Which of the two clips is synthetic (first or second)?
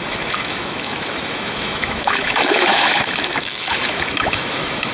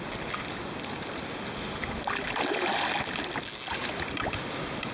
first